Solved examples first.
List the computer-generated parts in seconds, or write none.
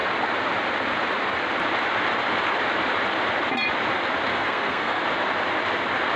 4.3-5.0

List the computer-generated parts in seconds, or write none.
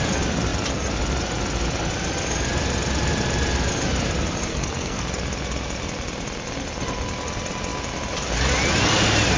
4.5-5.0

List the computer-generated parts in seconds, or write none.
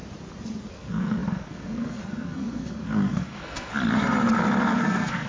0.7-3.7; 4.6-5.3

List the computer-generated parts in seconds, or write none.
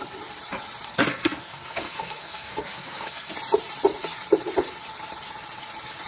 0.9-3.3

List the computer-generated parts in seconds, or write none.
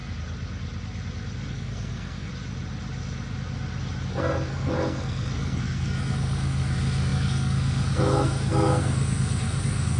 1.5-2.3; 4.1-10.0